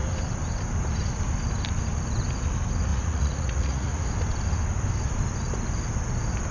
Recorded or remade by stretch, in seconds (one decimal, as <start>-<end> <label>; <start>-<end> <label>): 0.0-2.9 recorded; 2.9-4.0 remade; 4.0-6.5 recorded